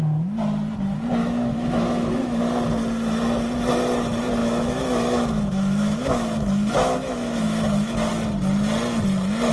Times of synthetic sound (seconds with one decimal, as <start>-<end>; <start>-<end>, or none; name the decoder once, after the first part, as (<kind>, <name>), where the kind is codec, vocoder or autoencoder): 1.2-2.4 (autoencoder, DAC-VAE); 4.4-8.1